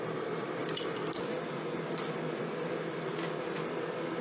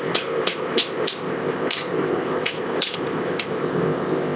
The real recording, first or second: first